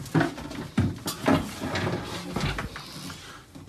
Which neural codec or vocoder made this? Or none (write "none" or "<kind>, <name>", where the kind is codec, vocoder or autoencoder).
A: none